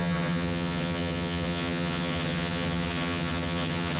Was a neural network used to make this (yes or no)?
yes